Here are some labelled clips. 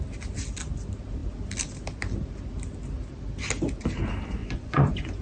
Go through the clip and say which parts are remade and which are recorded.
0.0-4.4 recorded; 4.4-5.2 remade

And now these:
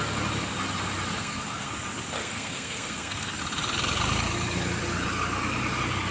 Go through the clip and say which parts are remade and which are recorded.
0.0-1.2 recorded; 1.2-1.7 remade; 1.7-2.2 recorded; 2.2-3.4 remade; 3.4-6.1 recorded

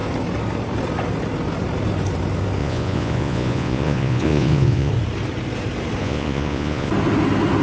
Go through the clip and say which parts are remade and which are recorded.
0.0-2.6 recorded; 2.6-4.9 remade; 4.9-6.0 recorded; 6.0-6.9 remade; 6.9-7.6 recorded

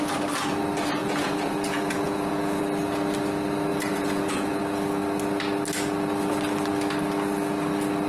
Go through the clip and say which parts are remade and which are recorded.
0.0-1.0 recorded; 1.0-2.6 remade; 2.6-3.7 recorded; 3.7-4.6 remade; 4.6-8.1 recorded

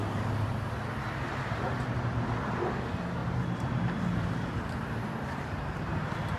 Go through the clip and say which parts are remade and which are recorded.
0.0-3.2 recorded; 3.2-6.0 remade; 6.0-6.4 recorded

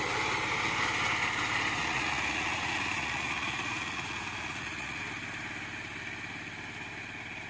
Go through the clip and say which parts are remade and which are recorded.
0.0-1.8 recorded; 1.8-5.0 remade; 5.0-7.5 recorded

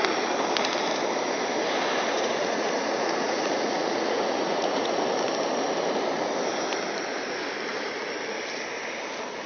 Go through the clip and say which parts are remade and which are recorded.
0.0-2.1 recorded; 2.1-5.0 remade; 5.0-9.5 recorded